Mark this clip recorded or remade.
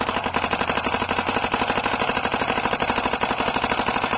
recorded